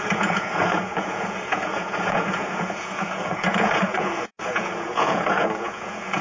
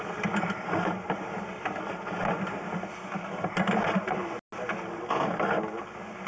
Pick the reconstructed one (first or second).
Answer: first